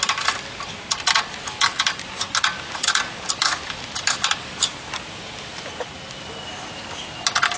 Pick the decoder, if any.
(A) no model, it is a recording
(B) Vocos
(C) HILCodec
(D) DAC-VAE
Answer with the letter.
A